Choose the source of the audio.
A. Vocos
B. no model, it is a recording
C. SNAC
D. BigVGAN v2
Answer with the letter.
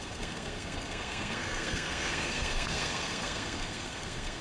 C